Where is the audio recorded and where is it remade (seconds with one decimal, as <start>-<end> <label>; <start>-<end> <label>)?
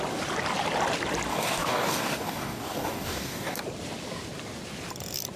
0.0-1.3 recorded; 1.3-3.6 remade; 3.6-5.4 recorded